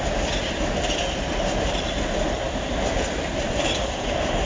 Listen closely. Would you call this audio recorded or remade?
remade